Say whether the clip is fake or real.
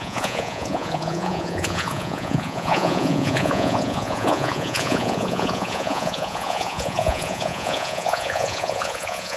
fake